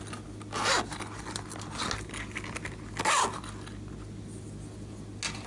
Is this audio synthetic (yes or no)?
no